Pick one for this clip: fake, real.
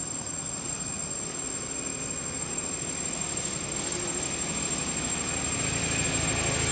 real